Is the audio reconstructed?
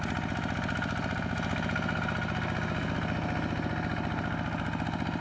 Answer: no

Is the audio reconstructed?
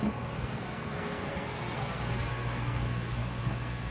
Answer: yes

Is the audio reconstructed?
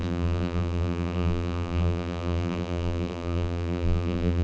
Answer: yes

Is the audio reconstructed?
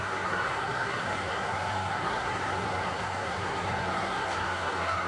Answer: yes